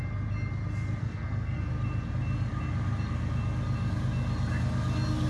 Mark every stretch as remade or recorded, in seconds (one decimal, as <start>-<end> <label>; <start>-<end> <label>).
0.0-1.0 recorded; 1.0-1.6 remade; 1.6-5.3 recorded